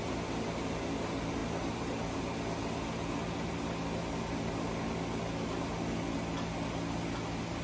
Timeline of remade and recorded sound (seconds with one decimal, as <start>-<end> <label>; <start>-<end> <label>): 0.0-7.6 recorded

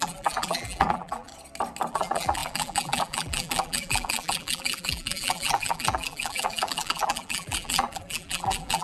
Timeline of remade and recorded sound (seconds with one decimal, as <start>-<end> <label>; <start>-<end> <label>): 0.0-1.3 remade; 1.3-1.9 recorded; 1.9-8.8 remade

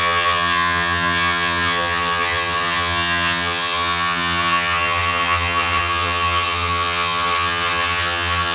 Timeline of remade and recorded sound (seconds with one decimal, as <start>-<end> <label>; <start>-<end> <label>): 0.0-8.5 remade

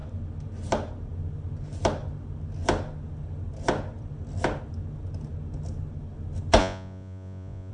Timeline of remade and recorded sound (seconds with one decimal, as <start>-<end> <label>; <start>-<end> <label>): 0.0-6.6 recorded; 6.6-7.7 remade

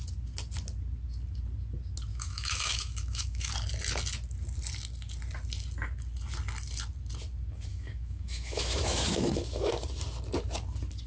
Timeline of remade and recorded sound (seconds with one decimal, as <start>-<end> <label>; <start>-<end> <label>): 0.0-2.1 recorded; 2.1-3.5 remade; 3.5-7.7 recorded; 7.7-9.7 remade; 9.7-11.1 recorded